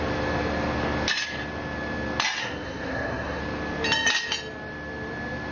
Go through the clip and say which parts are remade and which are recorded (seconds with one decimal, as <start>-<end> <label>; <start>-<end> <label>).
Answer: 0.0-2.4 recorded; 2.4-3.4 remade; 3.4-5.5 recorded